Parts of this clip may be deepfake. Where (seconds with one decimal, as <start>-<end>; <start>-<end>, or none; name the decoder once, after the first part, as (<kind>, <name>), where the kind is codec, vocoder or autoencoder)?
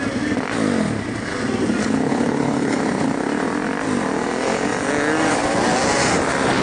1.8-2.8 (codec, HILCodec)